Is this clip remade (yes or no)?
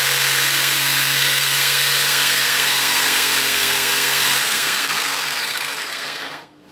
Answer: yes